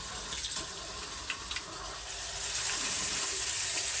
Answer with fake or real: real